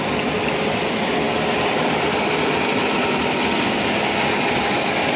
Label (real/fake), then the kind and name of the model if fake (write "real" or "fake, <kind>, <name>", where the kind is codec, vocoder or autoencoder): real